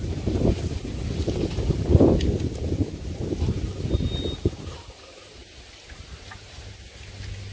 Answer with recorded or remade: recorded